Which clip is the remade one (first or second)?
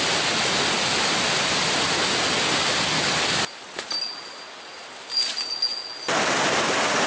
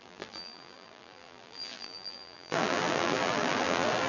second